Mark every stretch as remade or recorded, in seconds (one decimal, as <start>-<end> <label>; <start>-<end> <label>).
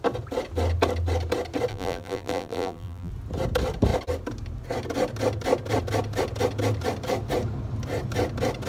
0.0-1.7 recorded; 1.7-3.1 remade; 3.1-8.7 recorded